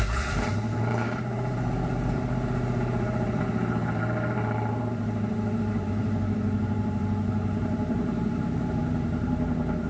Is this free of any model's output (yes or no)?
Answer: no